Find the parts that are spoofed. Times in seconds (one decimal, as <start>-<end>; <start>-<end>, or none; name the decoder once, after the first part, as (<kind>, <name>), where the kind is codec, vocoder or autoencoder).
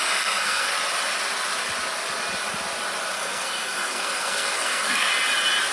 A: 0.0-0.7 (codec, SNAC); 3.1-5.1